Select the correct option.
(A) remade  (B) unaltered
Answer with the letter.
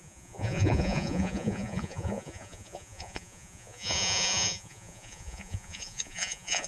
A